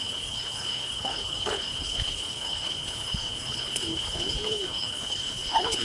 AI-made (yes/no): yes